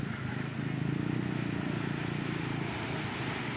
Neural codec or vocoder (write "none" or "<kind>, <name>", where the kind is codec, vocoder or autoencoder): none